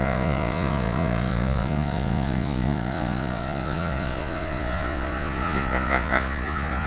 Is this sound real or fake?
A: fake